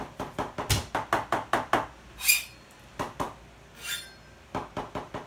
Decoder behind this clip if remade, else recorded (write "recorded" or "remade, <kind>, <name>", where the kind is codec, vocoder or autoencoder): recorded